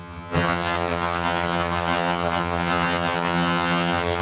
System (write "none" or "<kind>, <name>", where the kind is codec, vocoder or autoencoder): vocoder, HiFi-GAN